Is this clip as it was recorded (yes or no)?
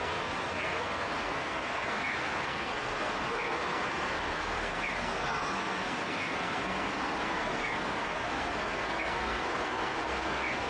no